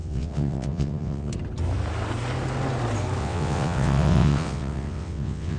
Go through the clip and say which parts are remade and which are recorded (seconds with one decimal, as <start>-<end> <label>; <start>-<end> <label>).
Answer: 0.0-1.3 remade; 1.3-3.2 recorded; 3.2-5.6 remade